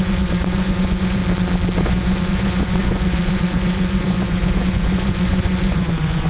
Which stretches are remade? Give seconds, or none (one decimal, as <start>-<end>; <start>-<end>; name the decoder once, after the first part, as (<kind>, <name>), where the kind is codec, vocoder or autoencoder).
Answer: 0.0-1.2 (vocoder, Vocos); 1.8-6.3